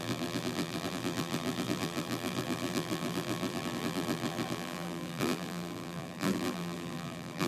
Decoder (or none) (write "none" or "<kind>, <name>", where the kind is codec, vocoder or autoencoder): vocoder, BigVGAN v2